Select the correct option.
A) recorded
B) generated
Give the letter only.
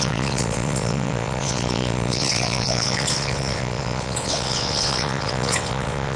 B